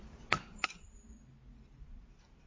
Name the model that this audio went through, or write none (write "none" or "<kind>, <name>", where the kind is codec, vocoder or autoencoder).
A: none